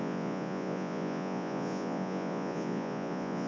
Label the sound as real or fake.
fake